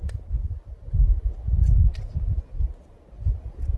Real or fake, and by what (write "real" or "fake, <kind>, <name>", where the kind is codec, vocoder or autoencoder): real